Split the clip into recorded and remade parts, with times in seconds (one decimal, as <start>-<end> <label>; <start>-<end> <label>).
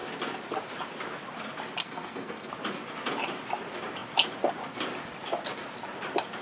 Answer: 0.0-1.8 recorded; 1.8-2.5 remade; 2.5-6.4 recorded